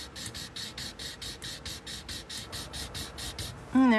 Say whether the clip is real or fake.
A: real